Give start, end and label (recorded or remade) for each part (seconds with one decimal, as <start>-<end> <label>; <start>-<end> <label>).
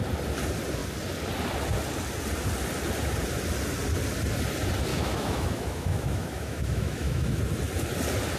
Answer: 0.0-4.9 recorded; 4.9-7.4 remade; 7.4-8.4 recorded